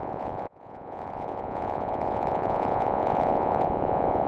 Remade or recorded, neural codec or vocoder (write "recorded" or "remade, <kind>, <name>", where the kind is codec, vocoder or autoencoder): remade, vocoder, Vocos